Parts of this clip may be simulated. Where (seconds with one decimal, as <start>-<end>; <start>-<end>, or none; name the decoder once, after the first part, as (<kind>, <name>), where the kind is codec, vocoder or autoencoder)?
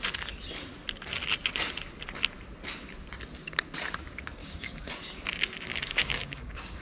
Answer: 4.4-4.9 (codec, DAC); 5.7-6.8